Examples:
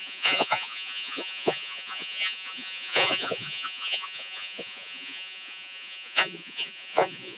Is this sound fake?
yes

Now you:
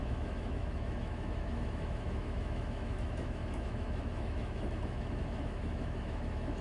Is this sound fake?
yes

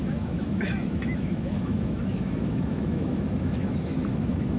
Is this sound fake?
yes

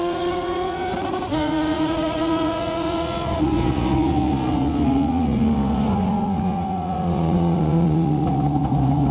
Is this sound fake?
yes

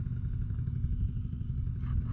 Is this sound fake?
no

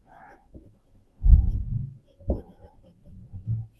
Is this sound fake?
yes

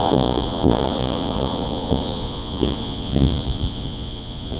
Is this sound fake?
yes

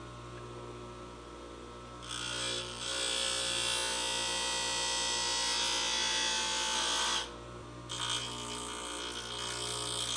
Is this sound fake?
no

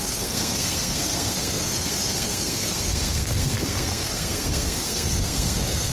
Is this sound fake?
yes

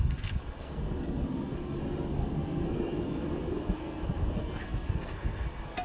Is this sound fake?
yes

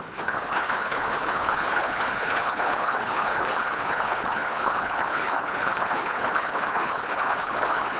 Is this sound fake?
yes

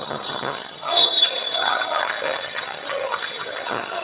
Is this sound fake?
yes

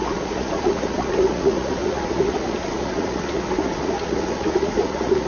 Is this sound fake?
yes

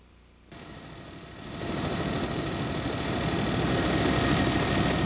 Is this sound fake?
no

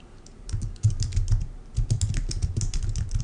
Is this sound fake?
no